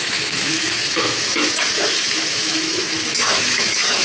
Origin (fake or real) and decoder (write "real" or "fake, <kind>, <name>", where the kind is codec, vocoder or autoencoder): fake, autoencoder, DAC-VAE